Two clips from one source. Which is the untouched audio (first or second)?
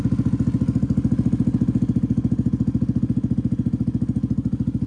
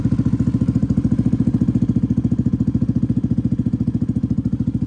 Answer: first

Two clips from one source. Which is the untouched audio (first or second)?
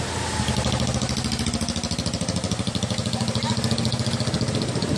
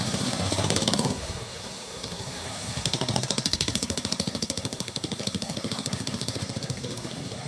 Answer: first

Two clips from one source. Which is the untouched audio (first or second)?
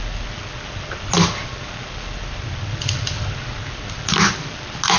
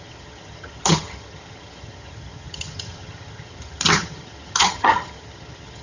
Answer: first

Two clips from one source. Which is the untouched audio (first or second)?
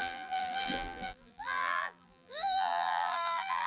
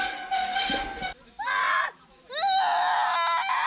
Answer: second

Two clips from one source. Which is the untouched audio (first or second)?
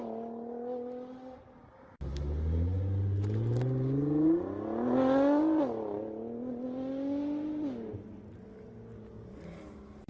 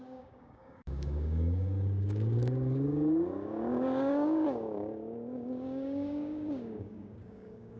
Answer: first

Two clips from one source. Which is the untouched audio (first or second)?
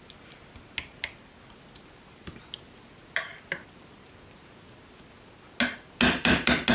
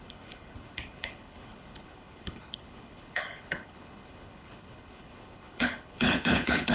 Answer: first